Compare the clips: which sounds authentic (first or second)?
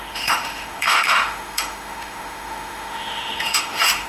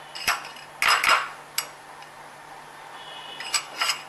second